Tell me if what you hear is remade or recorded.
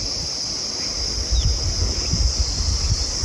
recorded